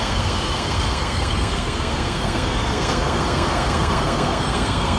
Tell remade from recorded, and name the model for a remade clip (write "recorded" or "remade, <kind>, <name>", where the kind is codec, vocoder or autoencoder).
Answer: remade, codec, SNAC